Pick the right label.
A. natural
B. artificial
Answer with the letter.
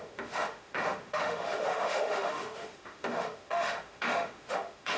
B